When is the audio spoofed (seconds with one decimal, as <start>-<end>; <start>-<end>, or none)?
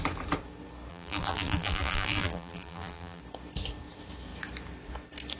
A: 0.9-3.2